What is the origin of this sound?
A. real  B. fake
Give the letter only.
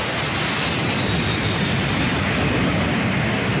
A